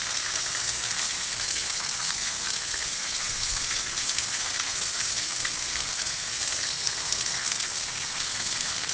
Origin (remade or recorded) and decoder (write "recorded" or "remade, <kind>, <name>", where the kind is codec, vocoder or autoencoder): remade, codec, SNAC